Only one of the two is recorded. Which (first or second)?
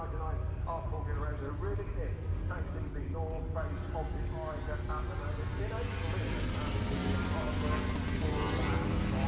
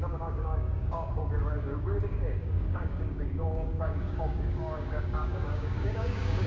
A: first